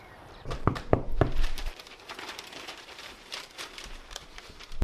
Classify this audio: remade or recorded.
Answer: remade